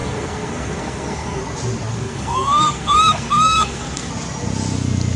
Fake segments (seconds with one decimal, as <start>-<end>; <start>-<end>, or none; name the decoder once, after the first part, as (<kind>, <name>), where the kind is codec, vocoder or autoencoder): 0.0-1.4 (codec, SNAC); 1.9-4.1